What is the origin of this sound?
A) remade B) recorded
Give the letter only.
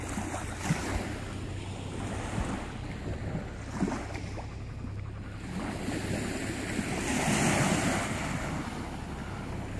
B